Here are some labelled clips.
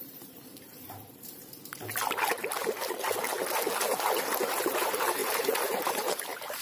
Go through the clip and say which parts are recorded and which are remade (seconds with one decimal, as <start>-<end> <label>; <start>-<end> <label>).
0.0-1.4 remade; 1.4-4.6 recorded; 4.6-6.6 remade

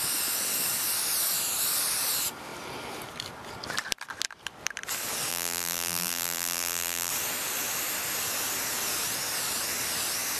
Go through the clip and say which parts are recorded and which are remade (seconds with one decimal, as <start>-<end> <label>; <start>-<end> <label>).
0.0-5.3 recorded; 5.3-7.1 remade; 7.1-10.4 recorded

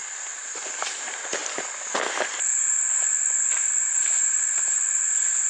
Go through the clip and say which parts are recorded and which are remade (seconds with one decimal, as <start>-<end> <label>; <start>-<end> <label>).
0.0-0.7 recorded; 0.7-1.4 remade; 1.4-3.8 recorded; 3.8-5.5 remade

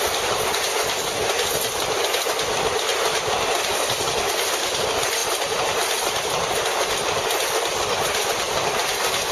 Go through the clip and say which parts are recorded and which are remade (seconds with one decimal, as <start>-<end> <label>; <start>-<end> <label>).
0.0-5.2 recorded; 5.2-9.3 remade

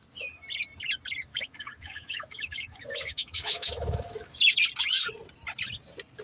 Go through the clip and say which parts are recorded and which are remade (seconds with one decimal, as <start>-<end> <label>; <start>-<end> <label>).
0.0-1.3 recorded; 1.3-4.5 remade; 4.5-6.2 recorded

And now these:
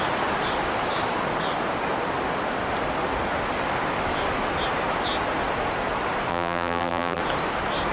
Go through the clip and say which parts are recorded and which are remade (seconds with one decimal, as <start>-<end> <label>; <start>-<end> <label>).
0.0-6.3 recorded; 6.3-7.2 remade; 7.2-7.9 recorded

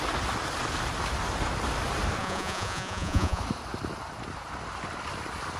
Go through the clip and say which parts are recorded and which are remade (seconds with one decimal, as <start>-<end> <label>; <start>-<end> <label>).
0.0-2.2 recorded; 2.2-3.4 remade; 3.4-5.6 recorded